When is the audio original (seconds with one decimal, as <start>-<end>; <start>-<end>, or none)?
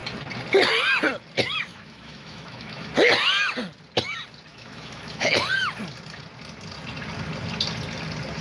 0.0-1.7; 2.9-4.5; 5.3-8.4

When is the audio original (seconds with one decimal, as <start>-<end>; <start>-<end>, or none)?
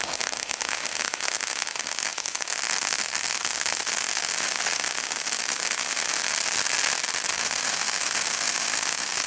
6.2-7.3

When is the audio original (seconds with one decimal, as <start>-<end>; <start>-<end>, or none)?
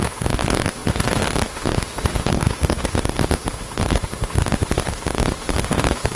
none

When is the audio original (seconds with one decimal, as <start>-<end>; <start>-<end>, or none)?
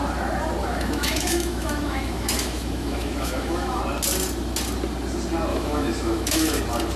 0.0-0.6; 3.8-5.5; 6.6-7.0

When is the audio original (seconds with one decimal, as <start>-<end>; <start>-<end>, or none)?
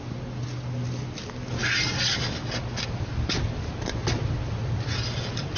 0.0-5.6